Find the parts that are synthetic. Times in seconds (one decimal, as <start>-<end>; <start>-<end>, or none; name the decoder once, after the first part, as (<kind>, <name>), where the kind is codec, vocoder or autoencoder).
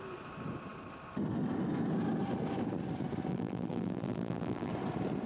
3.3-4.7 (vocoder, BigVGAN v2)